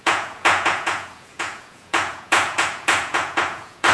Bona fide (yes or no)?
no